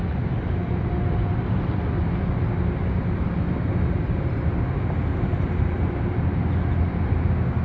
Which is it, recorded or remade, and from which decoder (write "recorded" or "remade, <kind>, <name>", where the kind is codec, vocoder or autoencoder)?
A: recorded